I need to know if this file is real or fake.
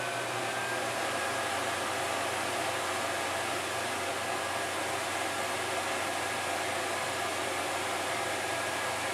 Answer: real